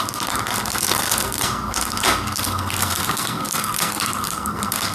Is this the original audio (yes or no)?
no